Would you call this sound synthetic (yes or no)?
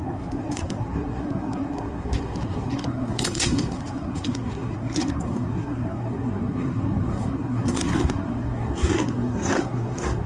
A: yes